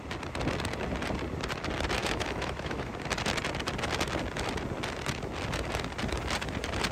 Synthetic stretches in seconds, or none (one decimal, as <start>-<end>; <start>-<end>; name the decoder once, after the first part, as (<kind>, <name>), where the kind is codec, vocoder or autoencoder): 2.0-2.9 (autoencoder, DAC-VAE)